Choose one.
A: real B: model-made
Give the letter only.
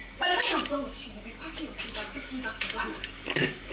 B